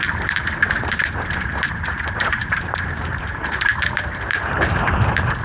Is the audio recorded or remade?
remade